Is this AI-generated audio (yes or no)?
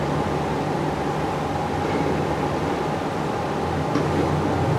no